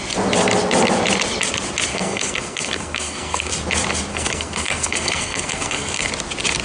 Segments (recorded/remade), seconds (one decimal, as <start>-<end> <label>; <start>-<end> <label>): 0.0-1.9 recorded; 1.9-3.5 remade; 3.5-4.1 recorded; 4.1-6.1 remade; 6.1-6.6 recorded

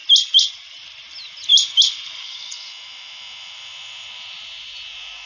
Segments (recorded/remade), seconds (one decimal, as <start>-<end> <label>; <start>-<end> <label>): 0.0-5.3 recorded

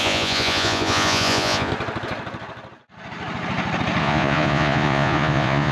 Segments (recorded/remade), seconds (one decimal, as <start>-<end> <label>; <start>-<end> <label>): 0.0-1.7 remade; 1.7-4.0 recorded; 4.0-5.7 remade

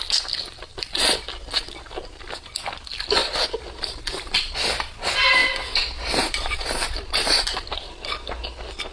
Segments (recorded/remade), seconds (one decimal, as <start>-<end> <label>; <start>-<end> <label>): 0.0-5.4 recorded; 5.4-7.9 remade; 7.9-8.9 recorded

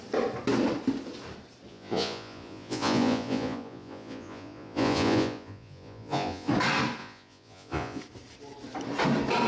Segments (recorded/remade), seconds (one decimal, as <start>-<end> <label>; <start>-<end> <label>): 0.0-1.7 recorded; 1.7-6.5 remade; 6.5-7.0 recorded; 7.0-8.0 remade; 8.0-9.5 recorded

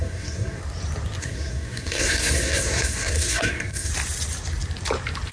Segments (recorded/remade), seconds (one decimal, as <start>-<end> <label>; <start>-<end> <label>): 0.0-0.6 remade; 0.6-1.2 recorded; 1.2-3.9 remade; 3.9-5.3 recorded